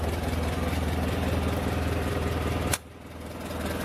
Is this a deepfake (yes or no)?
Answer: no